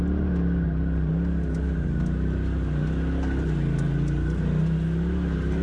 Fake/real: real